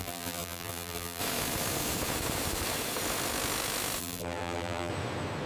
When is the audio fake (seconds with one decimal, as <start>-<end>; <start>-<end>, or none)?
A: 0.0-1.2; 4.0-4.9